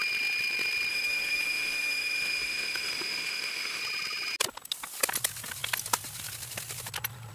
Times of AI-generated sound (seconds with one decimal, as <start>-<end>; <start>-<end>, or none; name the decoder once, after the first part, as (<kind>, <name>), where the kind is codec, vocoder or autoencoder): 0.9-3.8 (autoencoder, DAC-VAE)